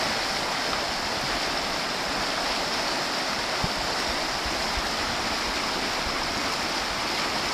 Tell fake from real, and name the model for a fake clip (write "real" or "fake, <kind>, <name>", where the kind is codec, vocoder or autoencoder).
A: real